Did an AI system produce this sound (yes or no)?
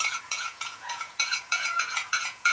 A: yes